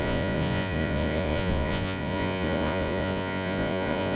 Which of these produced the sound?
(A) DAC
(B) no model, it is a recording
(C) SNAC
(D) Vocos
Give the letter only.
D